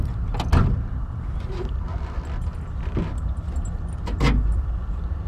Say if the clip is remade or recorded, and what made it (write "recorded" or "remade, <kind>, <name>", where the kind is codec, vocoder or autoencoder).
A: recorded